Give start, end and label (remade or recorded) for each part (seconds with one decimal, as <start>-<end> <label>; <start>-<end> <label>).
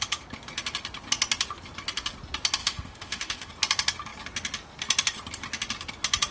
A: 0.0-2.6 recorded; 2.6-3.5 remade; 3.5-6.3 recorded